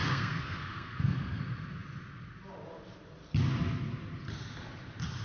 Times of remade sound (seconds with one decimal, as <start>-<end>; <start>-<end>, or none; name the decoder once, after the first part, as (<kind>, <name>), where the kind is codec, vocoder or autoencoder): 0.0-1.4 (codec, SNAC)